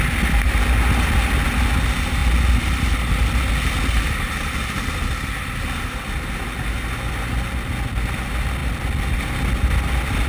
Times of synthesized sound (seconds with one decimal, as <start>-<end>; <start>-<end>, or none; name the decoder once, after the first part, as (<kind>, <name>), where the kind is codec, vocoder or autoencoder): none